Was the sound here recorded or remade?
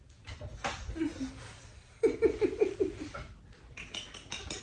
recorded